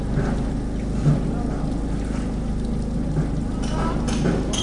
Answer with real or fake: real